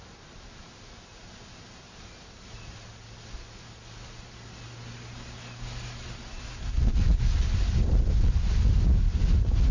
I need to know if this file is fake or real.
real